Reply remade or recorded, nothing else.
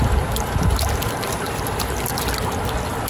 recorded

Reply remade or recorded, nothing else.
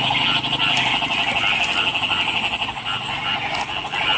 recorded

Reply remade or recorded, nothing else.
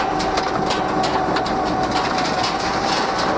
recorded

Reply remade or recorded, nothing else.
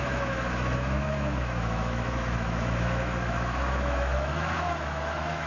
remade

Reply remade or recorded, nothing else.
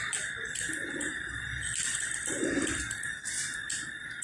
recorded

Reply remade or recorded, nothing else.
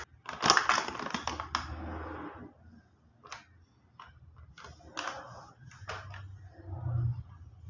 recorded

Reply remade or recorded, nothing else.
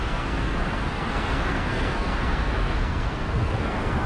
remade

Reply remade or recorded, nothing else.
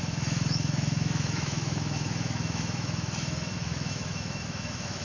remade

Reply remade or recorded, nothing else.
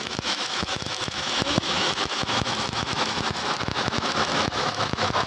remade